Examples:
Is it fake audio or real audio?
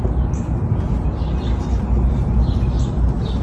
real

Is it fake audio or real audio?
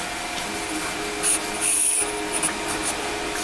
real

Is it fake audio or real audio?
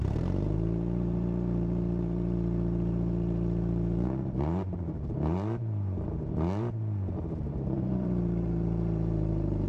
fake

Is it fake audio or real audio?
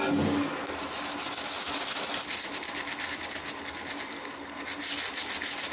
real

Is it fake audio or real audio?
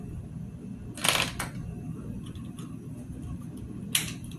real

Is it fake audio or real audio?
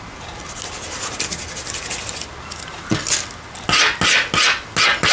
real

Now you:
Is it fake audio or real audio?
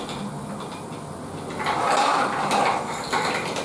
real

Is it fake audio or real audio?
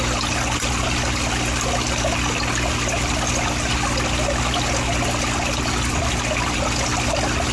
real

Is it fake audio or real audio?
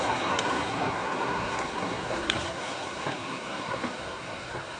fake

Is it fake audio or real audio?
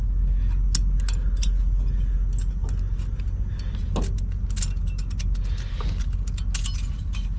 real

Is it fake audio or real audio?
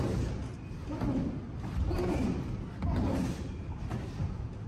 real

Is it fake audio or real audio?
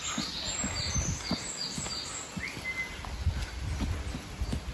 real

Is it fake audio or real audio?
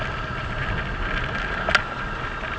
real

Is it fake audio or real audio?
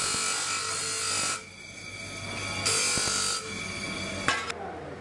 real